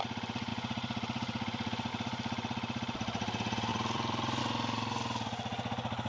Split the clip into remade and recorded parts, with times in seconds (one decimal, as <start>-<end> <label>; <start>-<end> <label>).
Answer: 0.0-0.5 recorded; 0.5-1.9 remade; 1.9-3.7 recorded; 3.7-4.4 remade; 4.4-6.1 recorded